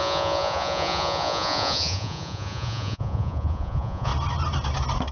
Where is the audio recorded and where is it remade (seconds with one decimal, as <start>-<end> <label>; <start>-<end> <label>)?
0.0-4.1 remade; 4.1-5.1 recorded